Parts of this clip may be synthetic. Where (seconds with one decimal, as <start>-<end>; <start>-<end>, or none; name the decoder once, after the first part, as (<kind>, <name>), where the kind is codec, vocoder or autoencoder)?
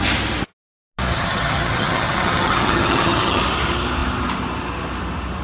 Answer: 1.1-3.4 (vocoder, HiFi-GAN)